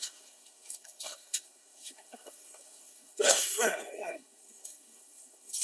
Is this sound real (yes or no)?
no